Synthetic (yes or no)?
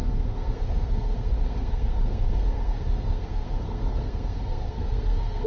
yes